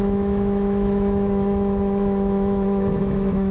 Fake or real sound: fake